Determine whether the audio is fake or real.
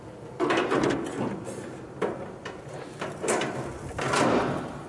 real